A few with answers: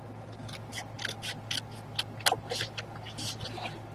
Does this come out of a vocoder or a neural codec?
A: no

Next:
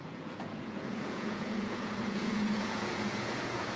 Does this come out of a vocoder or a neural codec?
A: yes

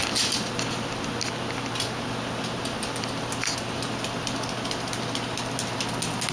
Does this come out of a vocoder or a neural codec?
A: no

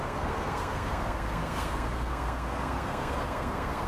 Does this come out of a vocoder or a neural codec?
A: yes